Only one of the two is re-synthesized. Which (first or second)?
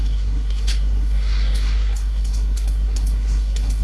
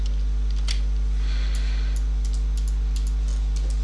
first